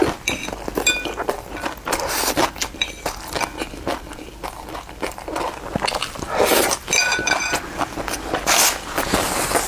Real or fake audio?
real